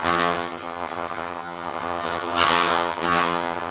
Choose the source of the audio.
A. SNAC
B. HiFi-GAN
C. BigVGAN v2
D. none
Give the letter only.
B